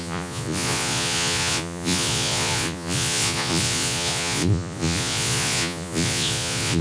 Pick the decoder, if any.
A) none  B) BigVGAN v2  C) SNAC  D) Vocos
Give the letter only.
D